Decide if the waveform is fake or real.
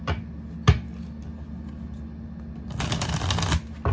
real